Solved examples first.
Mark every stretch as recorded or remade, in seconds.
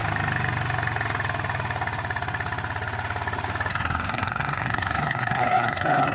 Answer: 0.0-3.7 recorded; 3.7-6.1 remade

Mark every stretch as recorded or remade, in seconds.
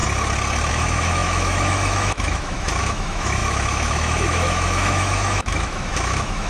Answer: 0.0-0.7 recorded; 0.7-6.5 remade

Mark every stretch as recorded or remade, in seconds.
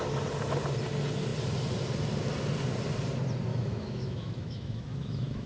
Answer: 0.0-3.5 recorded; 3.5-5.5 remade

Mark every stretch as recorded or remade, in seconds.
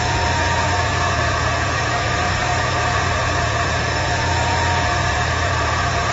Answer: 0.0-6.1 remade